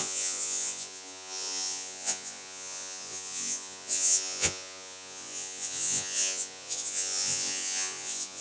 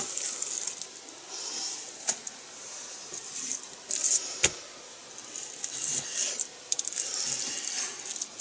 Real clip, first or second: second